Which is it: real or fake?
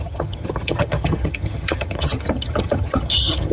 fake